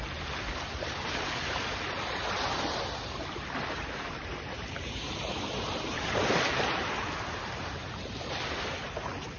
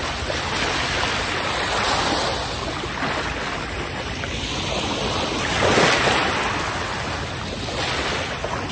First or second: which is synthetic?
first